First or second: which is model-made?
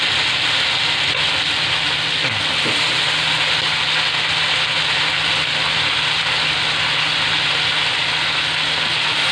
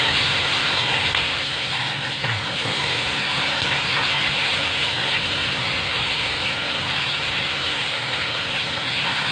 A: second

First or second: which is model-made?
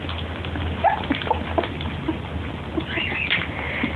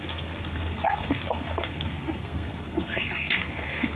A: second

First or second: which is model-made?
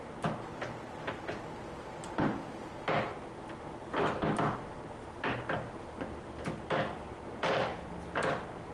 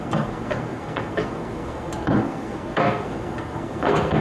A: second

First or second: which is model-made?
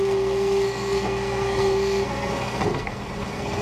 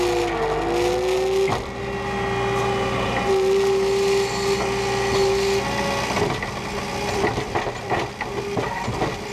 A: first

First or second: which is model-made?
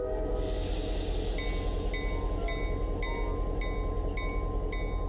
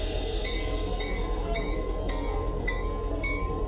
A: second